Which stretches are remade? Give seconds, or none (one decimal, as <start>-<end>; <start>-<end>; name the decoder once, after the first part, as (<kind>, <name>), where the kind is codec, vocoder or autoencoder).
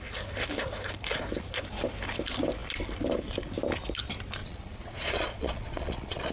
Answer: 4.4-6.3 (vocoder, Vocos)